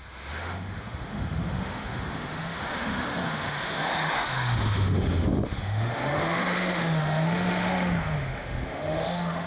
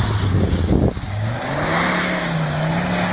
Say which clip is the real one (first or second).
second